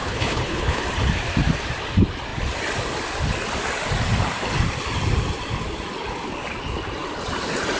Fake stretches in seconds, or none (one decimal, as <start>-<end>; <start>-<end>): 0.0-0.8